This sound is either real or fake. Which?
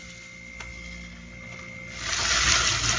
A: real